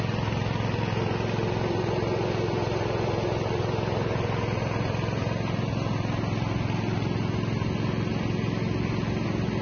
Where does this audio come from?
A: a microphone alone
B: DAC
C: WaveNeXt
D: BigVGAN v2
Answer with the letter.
A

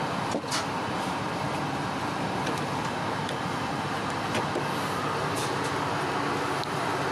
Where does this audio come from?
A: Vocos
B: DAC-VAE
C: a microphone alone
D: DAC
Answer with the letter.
C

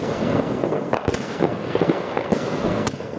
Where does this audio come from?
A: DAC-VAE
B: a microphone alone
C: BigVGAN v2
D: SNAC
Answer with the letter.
D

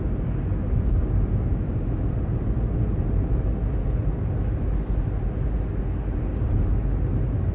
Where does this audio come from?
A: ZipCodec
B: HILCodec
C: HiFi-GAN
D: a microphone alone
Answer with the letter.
D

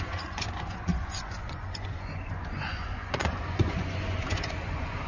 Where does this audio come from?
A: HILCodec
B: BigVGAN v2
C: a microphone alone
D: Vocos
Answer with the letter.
D